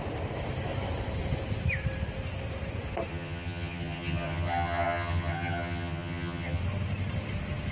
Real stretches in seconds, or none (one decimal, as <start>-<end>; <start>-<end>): 0.0-3.1; 6.6-7.7